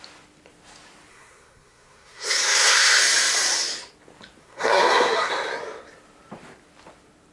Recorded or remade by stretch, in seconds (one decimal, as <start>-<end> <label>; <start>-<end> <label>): 0.0-1.1 recorded; 1.1-3.0 remade; 3.0-4.4 recorded; 4.4-5.3 remade; 5.3-7.3 recorded